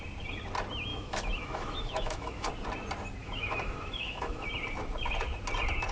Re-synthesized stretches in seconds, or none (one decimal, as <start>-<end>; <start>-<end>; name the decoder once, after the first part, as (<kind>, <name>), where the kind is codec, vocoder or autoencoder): 0.9-2.5 (autoencoder, DAC-VAE); 3.2-4.5